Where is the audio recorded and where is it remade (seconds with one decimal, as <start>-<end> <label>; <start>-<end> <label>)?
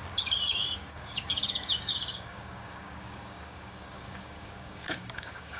0.0-5.6 remade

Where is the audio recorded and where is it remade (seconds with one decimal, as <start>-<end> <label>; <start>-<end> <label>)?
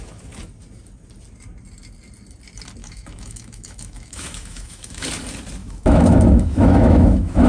0.0-2.8 recorded; 2.8-5.1 remade; 5.1-5.6 recorded; 5.6-7.5 remade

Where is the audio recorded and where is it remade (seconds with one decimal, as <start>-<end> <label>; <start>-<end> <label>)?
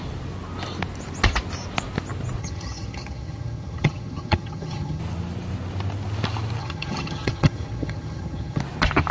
0.0-2.4 recorded; 2.4-5.0 remade; 5.0-6.6 recorded; 6.6-8.6 remade; 8.6-9.1 recorded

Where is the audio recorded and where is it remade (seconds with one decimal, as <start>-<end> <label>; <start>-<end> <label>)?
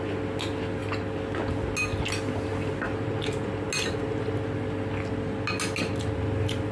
0.0-6.7 recorded